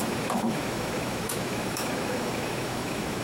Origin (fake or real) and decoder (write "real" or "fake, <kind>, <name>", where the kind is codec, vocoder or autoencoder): fake, autoencoder, DAC-VAE